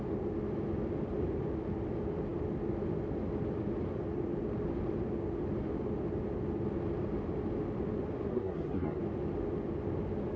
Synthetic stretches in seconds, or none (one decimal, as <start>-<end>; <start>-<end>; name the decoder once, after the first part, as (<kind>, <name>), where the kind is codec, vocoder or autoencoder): 8.3-9.0 (codec, SNAC)

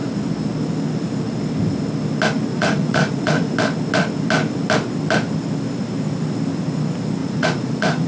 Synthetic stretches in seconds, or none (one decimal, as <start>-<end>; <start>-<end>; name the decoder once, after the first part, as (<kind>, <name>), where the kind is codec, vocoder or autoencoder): 2.5-3.5 (vocoder, Vocos); 7.2-8.1